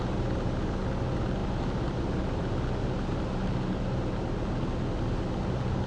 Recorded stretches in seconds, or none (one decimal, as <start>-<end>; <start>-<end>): 0.0-5.9